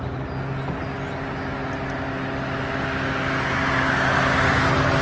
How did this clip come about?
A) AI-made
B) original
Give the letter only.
B